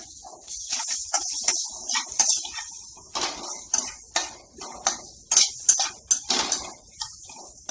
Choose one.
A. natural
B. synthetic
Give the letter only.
A